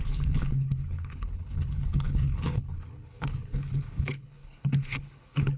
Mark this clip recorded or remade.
remade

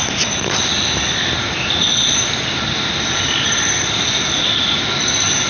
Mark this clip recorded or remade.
recorded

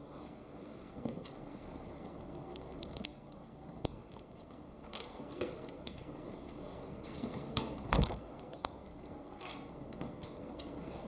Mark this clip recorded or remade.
remade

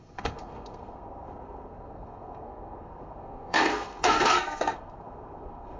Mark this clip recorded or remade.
remade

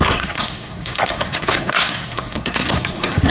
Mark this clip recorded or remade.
remade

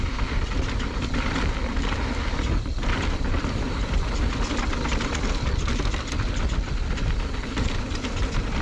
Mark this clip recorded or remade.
recorded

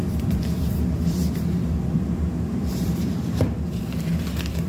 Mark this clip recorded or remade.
remade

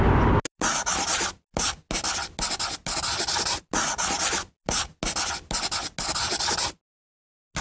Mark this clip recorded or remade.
recorded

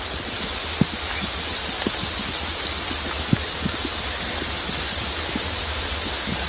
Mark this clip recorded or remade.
recorded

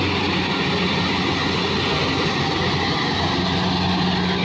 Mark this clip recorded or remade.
recorded